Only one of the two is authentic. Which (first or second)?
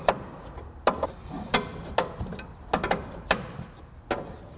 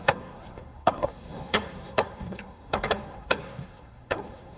first